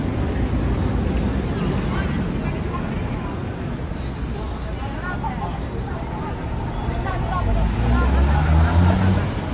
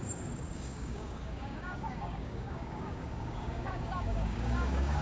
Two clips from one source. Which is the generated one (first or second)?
second